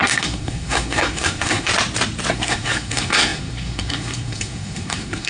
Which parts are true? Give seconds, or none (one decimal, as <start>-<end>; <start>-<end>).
1.7-2.3